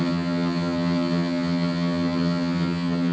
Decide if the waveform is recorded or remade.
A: remade